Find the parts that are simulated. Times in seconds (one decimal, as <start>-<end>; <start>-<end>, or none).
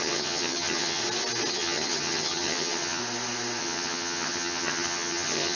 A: 0.0-1.0; 1.5-3.0; 3.6-5.6